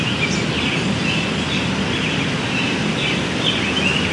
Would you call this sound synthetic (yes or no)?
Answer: no